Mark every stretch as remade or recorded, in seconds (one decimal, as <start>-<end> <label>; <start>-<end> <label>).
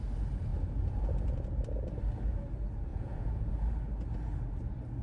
0.0-2.9 recorded; 2.9-3.5 remade; 3.5-5.0 recorded